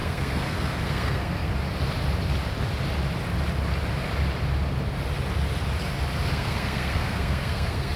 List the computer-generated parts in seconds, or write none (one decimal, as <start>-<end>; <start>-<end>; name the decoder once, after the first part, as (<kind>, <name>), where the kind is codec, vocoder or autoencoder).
0.0-1.5 (codec, SNAC); 6.3-8.0